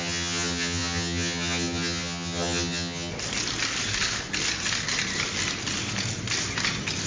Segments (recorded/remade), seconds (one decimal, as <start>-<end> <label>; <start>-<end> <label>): 0.0-3.1 remade; 3.1-7.1 recorded